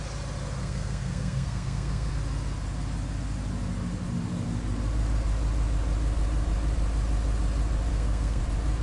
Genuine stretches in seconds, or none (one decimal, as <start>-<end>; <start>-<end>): 0.0-0.6; 2.1-7.9; 8.4-8.8